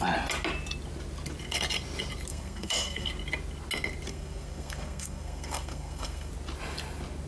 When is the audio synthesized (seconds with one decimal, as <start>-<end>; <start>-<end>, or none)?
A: 2.3-3.1; 4.1-6.3

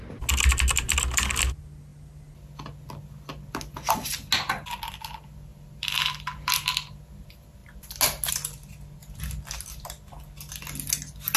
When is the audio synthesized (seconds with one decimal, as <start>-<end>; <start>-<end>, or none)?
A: none

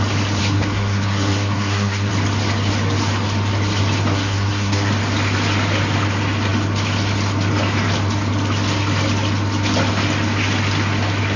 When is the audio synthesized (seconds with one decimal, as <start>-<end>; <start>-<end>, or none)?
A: 0.4-2.1; 4.1-4.9

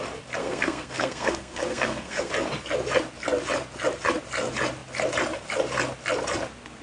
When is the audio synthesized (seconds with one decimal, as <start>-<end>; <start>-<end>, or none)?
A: 0.4-2.3

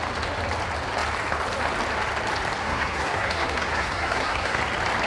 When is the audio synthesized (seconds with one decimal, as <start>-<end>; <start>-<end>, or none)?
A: 2.6-4.6

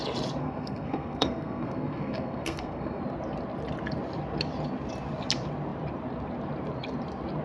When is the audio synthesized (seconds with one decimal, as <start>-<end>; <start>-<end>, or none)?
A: 0.4-3.0

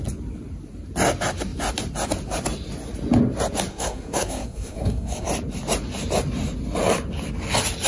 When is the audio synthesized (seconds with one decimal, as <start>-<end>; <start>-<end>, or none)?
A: 3.7-5.3

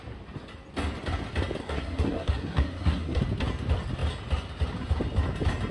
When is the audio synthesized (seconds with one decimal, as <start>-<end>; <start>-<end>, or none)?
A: 1.6-3.2